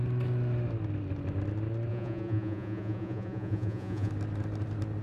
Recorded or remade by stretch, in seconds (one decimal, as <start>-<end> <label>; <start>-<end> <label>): 0.0-1.9 recorded; 1.9-4.1 remade; 4.1-5.0 recorded